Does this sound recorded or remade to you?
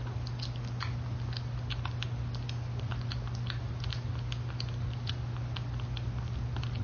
recorded